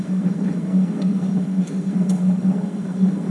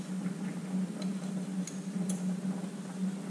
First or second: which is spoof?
first